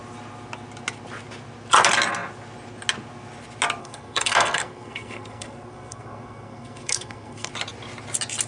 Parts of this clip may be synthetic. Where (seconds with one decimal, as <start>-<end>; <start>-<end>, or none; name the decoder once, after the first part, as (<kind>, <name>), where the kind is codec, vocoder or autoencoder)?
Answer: 3.8-7.5 (codec, SNAC)